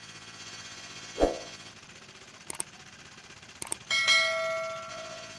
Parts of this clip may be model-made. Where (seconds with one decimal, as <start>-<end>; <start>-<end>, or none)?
0.0-1.7; 4.9-5.4